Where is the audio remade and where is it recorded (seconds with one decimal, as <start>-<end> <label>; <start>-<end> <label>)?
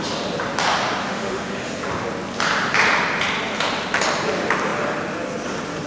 0.0-1.1 recorded; 1.1-1.7 remade; 1.7-5.9 recorded